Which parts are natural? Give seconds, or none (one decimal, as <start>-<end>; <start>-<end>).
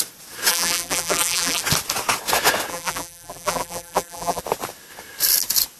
0.0-0.5; 1.6-2.7; 4.4-5.8